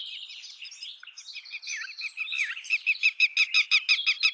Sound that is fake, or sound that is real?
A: real